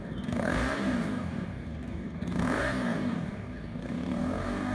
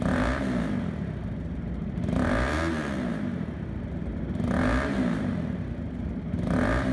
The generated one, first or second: first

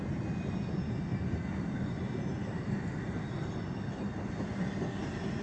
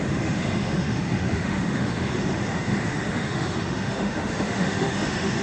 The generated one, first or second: second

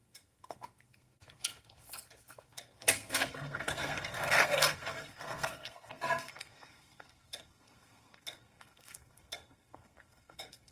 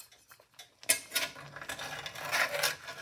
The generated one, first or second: first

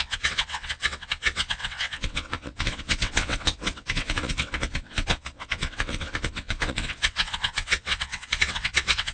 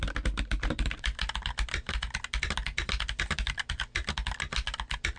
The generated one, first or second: first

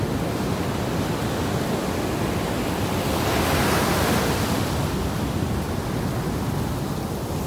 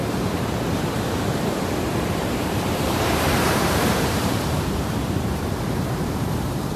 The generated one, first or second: second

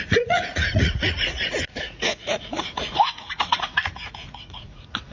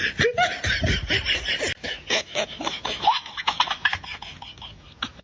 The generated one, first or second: first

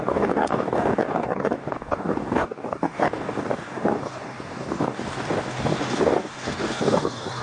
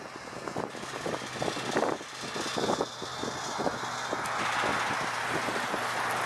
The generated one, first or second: first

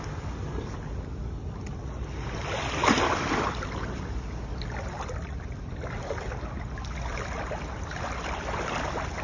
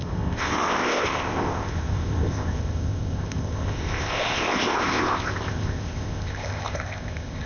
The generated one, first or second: second